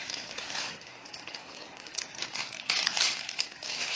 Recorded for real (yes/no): no